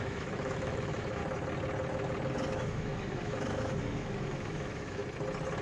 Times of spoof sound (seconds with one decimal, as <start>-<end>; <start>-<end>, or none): 0.0-1.2; 2.5-5.0